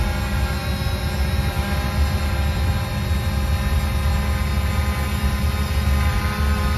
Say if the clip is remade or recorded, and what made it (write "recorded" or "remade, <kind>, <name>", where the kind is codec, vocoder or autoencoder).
recorded